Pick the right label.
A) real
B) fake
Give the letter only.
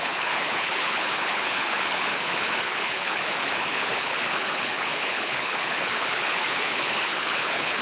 B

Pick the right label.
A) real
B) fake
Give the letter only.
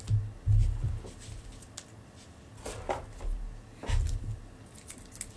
A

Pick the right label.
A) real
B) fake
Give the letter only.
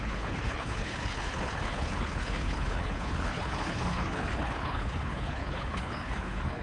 B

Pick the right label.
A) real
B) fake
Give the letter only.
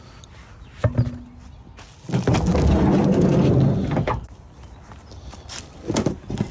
A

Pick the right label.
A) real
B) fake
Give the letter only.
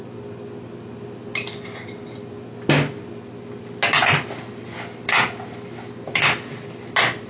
A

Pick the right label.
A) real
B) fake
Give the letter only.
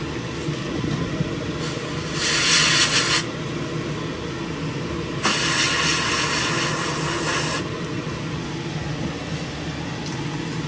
A